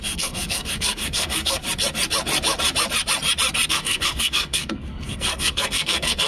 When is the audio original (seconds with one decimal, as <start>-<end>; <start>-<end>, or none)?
1.6-3.7